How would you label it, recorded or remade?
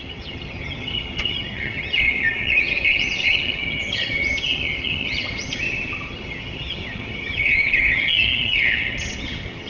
remade